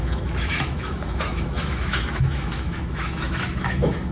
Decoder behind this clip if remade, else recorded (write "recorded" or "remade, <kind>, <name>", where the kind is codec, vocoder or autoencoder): remade, autoencoder, DAC-VAE